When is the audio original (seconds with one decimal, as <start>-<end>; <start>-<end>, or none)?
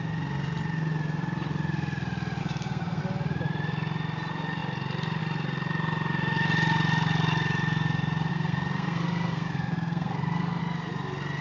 0.0-2.4; 3.0-8.3; 10.6-11.4